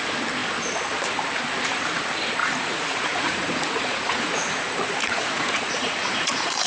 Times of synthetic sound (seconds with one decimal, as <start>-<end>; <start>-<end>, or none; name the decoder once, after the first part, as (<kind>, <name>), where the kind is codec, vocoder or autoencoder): 2.4-6.7 (vocoder, Vocos)